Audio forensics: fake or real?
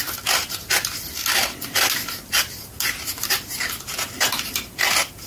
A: real